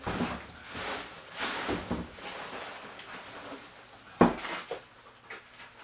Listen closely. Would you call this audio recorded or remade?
recorded